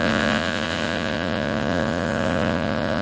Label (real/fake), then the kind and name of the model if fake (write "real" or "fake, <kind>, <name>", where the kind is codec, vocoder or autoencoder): fake, vocoder, Vocos